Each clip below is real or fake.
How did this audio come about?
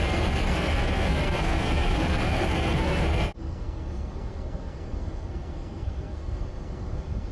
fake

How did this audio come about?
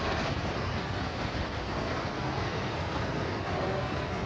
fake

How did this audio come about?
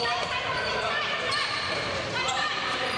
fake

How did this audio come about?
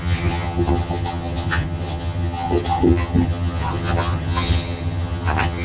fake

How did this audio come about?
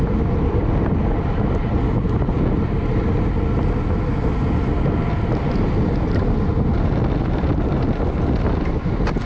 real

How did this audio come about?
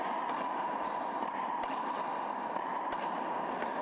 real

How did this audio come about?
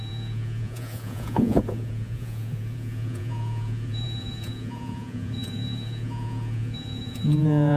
fake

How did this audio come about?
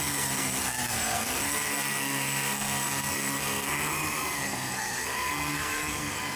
fake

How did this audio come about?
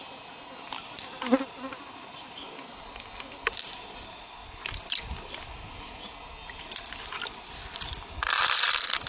real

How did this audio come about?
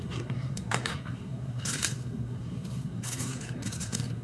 fake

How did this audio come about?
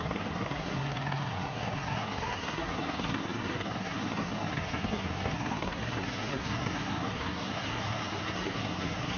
fake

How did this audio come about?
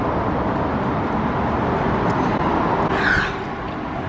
real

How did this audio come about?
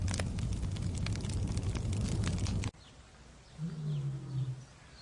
real